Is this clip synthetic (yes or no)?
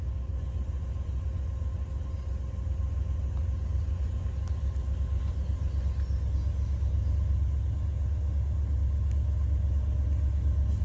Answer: no